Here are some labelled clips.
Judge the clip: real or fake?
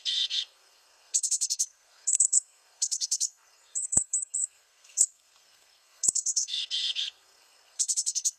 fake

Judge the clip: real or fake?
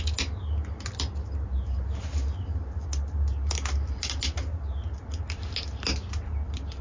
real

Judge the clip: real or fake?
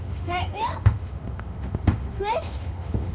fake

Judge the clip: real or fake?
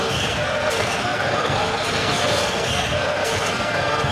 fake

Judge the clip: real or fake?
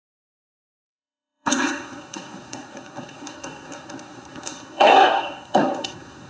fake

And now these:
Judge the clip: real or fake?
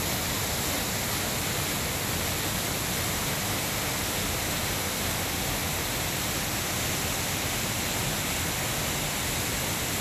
real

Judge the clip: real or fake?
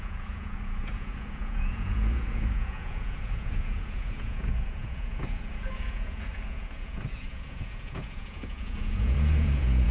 fake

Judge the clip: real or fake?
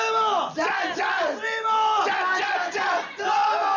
real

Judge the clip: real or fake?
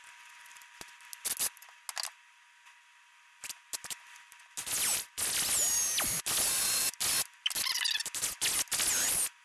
real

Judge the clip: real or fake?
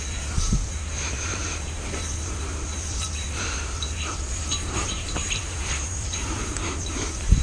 fake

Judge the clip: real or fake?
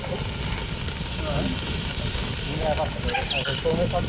real